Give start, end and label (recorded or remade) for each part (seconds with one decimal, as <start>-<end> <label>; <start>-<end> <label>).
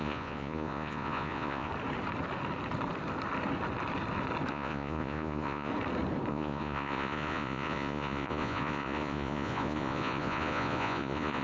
0.0-1.7 remade; 1.7-4.5 recorded; 4.5-5.7 remade; 5.7-6.3 recorded; 6.3-11.4 remade